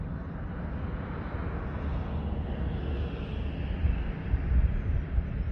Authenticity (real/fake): real